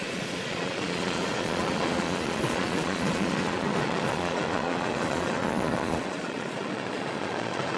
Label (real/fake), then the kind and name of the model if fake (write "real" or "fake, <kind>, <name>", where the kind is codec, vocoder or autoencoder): fake, vocoder, Vocos